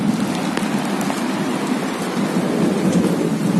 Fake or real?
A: real